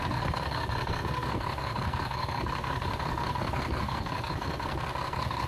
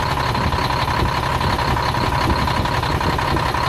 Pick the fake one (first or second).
first